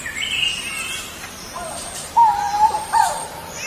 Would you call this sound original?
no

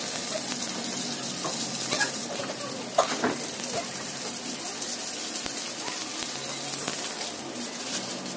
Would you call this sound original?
yes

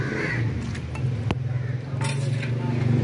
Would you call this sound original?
yes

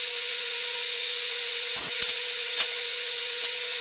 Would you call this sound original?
no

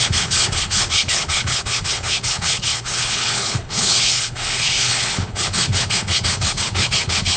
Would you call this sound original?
no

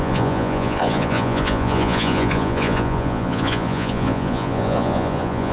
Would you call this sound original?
no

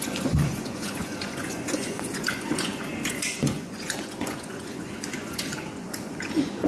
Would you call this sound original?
no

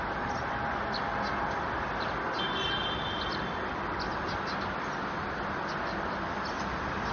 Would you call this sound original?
yes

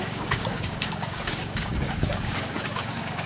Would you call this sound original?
no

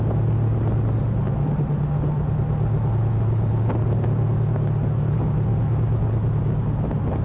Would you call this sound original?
yes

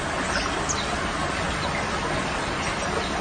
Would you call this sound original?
yes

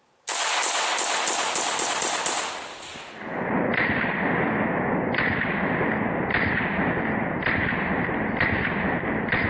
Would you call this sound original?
yes